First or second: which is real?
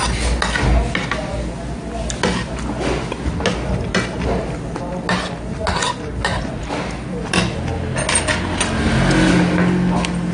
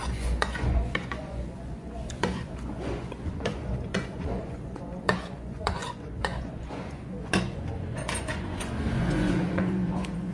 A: first